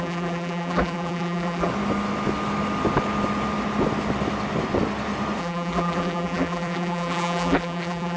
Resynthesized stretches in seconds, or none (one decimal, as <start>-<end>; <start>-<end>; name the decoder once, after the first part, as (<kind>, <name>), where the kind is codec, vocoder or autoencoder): 0.0-1.7 (vocoder, BigVGAN v2); 5.4-8.2